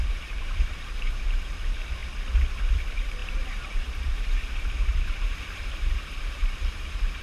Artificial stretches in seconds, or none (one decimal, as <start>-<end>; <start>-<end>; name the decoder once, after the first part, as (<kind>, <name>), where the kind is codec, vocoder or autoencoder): 0.0-2.0 (vocoder, BigVGAN v2); 2.7-7.2